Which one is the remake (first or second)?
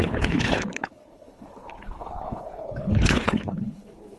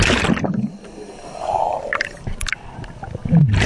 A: first